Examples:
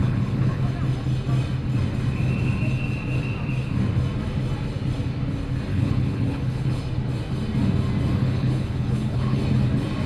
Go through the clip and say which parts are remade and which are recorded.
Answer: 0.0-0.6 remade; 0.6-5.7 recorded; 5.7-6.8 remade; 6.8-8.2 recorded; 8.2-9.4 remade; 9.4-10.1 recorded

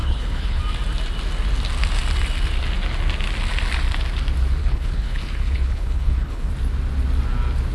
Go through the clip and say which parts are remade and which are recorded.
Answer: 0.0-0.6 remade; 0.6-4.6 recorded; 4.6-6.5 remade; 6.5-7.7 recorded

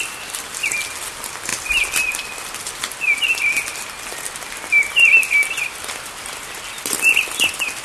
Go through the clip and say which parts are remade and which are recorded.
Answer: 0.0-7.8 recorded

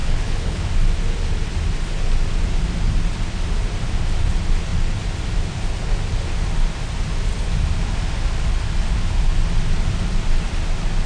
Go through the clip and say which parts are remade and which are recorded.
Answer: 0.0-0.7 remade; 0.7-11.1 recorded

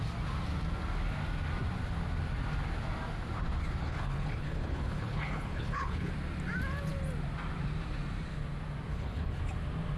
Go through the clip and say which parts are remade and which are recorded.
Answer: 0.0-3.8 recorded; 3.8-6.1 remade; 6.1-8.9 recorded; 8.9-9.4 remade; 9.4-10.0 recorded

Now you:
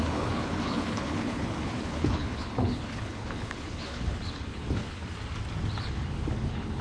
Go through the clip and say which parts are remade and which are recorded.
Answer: 0.0-5.0 remade; 5.0-5.8 recorded; 5.8-6.8 remade